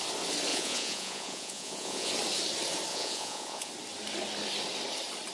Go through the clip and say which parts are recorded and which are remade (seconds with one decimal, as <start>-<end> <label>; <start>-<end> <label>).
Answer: 0.0-0.5 recorded; 0.5-2.1 remade; 2.1-2.9 recorded; 2.9-3.7 remade; 3.7-5.3 recorded